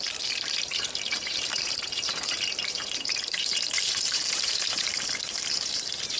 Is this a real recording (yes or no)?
no